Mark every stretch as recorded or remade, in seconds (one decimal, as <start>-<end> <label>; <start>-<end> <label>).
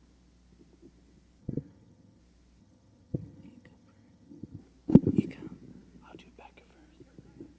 0.0-1.4 recorded; 1.4-2.2 remade; 2.2-2.6 recorded; 2.6-4.6 remade; 4.6-7.6 recorded